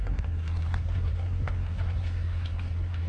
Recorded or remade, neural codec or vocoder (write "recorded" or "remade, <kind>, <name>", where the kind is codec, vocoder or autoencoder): remade, codec, SNAC